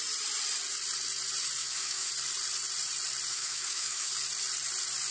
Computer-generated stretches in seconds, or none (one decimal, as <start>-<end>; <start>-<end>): 1.6-2.1; 3.3-4.1